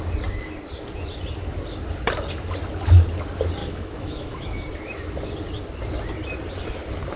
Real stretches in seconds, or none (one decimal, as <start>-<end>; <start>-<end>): 0.0-3.6; 4.6-7.2